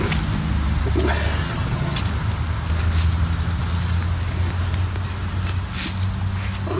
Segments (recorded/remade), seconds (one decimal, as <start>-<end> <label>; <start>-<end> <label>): 0.0-1.4 recorded; 1.4-2.0 remade; 2.0-6.8 recorded